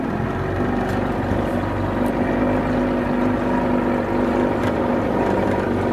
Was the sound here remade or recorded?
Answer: recorded